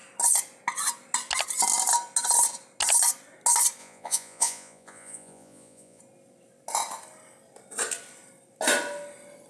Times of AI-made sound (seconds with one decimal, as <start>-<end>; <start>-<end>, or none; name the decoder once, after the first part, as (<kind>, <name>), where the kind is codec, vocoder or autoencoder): 3.8-6.0 (vocoder, Vocos)